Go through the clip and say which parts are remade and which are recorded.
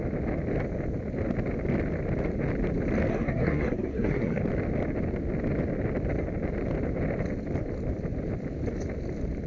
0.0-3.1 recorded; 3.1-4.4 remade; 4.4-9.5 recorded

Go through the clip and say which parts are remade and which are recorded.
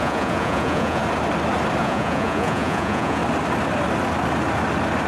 0.0-1.0 remade; 1.0-1.8 recorded; 1.8-3.2 remade; 3.2-5.1 recorded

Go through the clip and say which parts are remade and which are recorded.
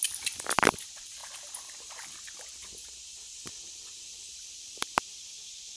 0.0-1.2 recorded; 1.2-2.2 remade; 2.2-3.1 recorded; 3.1-5.2 remade; 5.2-5.8 recorded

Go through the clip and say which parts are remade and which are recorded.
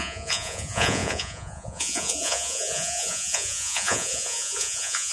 0.0-5.1 remade